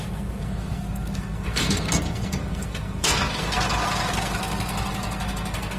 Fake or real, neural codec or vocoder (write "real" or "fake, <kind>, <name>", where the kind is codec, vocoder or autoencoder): fake, codec, SNAC